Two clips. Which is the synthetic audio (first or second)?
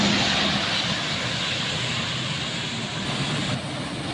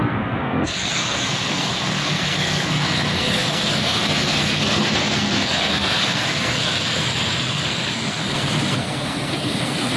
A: second